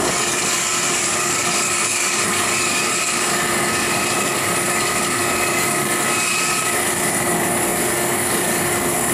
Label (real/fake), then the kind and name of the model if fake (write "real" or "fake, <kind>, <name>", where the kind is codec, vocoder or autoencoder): fake, codec, DAC